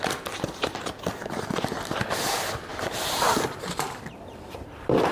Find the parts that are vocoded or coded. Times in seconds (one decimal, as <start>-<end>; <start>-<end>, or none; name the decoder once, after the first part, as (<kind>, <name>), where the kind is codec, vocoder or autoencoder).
2.7-4.1 (vocoder, BigVGAN v2)